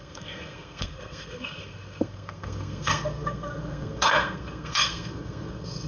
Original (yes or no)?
no